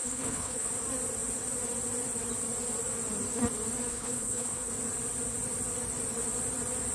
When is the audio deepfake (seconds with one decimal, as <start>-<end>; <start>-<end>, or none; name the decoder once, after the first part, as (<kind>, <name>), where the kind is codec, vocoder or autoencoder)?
0.0-0.7 (codec, HILCodec); 3.9-4.7